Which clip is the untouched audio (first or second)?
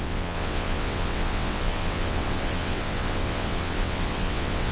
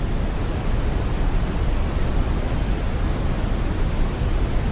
second